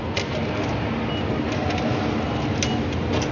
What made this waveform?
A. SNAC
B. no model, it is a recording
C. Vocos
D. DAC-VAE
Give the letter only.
B